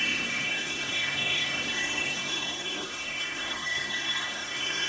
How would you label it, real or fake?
fake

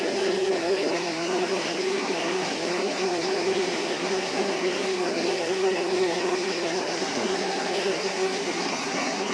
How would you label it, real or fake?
fake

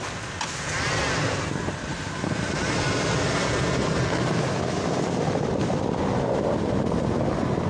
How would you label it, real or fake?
real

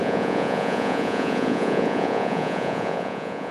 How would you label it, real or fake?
fake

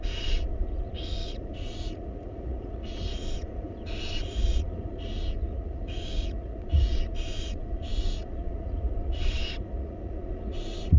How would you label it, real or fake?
fake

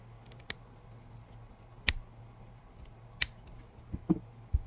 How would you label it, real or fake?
real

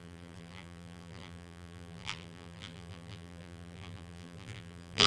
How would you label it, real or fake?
fake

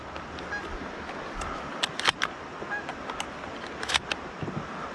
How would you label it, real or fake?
real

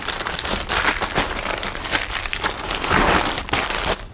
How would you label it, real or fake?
fake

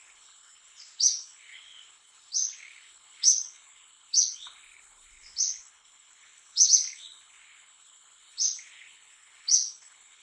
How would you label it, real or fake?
fake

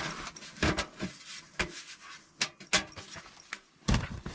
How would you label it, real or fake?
real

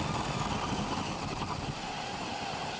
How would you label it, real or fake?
real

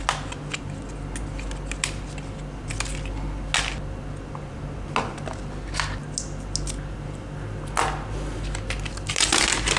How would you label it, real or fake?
real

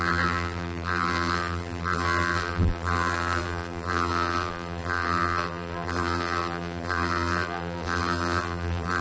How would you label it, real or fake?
fake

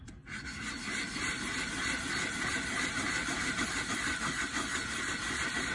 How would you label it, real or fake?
real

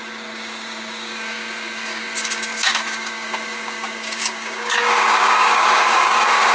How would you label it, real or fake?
fake